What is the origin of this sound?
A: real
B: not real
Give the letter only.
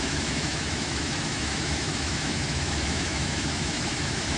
B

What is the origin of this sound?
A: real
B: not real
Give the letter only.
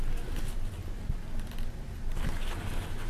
A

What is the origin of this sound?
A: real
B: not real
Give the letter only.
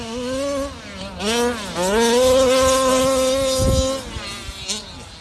A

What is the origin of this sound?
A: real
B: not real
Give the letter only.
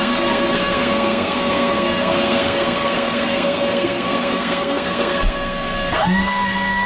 B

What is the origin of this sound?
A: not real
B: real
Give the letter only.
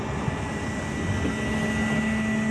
B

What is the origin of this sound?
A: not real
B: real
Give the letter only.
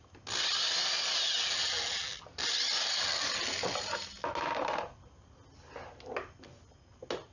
B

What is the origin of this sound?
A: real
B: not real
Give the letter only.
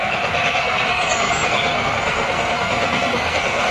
B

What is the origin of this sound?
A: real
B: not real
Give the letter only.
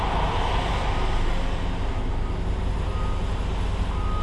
A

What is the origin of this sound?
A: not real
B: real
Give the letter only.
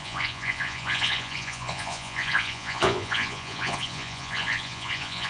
A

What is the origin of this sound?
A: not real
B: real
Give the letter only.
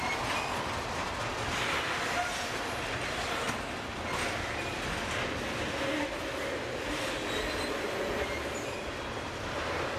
B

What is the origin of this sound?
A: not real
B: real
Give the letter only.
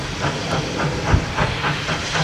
B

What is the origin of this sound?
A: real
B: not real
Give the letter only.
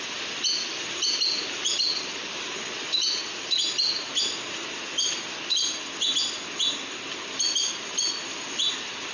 A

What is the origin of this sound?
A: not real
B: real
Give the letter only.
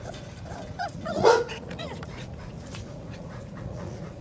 A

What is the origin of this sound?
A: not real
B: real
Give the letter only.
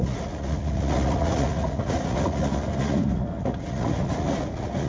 A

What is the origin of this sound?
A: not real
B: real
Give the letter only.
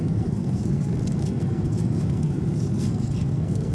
A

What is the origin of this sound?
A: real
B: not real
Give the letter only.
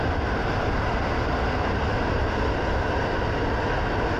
A